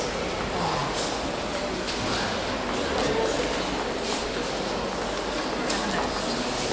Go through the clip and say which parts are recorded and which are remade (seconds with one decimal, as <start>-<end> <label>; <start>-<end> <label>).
0.0-6.7 recorded